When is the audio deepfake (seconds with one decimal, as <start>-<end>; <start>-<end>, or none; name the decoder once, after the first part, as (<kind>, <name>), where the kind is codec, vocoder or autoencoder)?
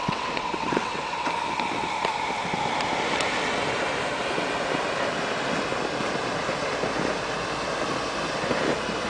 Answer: 0.0-1.3 (vocoder, WaveNeXt)